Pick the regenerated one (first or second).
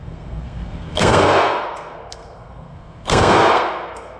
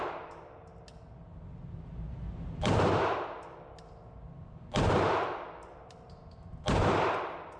first